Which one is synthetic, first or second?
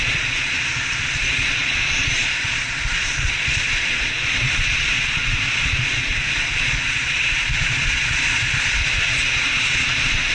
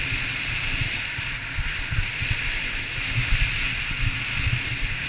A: first